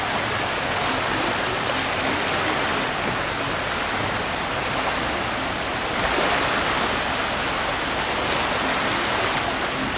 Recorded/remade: recorded